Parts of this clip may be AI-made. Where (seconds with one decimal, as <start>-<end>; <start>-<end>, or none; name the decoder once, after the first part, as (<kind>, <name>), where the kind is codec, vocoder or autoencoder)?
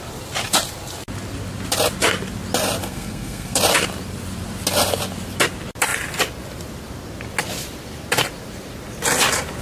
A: 2.8-3.6 (codec, SNAC)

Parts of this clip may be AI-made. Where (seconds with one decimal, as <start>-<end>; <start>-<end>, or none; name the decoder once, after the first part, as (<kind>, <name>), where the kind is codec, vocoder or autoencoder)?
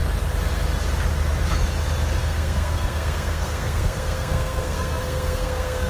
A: 2.2-5.9 (codec, SNAC)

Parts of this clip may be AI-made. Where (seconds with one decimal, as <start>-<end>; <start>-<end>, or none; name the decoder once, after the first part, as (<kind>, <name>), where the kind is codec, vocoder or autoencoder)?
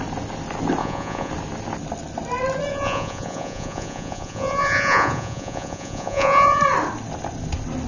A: 0.8-1.3 (vocoder, Vocos); 2.7-6.6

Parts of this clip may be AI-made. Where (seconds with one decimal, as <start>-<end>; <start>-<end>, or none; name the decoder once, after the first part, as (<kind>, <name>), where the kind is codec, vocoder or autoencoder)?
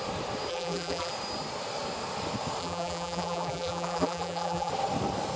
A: 0.5-1.1 (vocoder, BigVGAN v2); 2.6-4.7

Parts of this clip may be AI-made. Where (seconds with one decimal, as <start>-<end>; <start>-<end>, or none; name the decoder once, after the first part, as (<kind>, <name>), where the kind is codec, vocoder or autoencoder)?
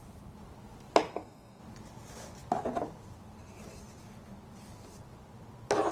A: 1.1-1.6 (codec, DAC)